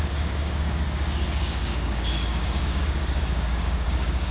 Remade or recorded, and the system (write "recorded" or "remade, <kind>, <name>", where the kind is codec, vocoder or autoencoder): remade, codec, DAC